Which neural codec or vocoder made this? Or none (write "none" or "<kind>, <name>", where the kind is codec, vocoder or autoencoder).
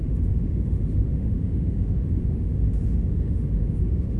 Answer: autoencoder, DAC-VAE